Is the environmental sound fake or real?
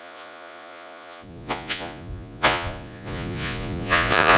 fake